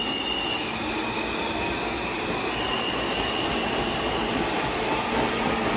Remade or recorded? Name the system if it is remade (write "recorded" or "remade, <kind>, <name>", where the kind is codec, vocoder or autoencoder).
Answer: recorded